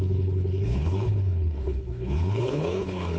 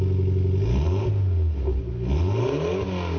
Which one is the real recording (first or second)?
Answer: second